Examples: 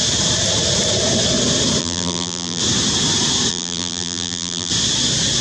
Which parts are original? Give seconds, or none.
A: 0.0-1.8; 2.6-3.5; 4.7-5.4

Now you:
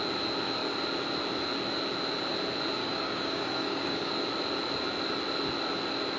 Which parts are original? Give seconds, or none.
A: 0.0-2.8; 4.1-6.2

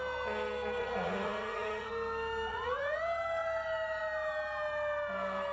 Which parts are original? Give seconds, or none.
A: 0.0-0.8; 1.9-2.5; 3.0-5.5

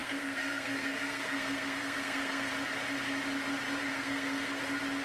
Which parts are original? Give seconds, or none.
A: 2.5-3.9; 4.6-5.0

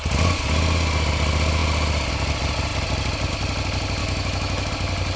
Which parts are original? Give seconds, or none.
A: 0.0-4.0; 4.7-5.2

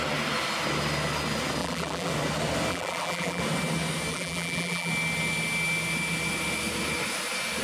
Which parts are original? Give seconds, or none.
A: 0.0-1.6; 2.1-2.7; 3.4-4.1; 4.9-7.6

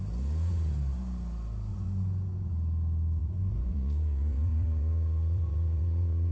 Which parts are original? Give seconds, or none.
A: 0.0-1.7; 2.5-3.2